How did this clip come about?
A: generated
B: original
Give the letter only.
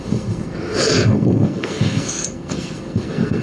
A